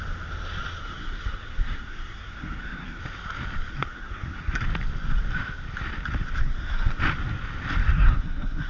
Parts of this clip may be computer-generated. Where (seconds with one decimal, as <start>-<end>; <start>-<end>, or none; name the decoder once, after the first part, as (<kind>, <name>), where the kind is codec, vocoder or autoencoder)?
0.8-3.0 (codec, SNAC); 3.7-4.6; 6.4-7.0; 7.8-8.7